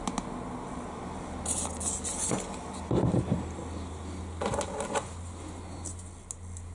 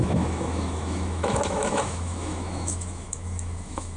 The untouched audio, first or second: first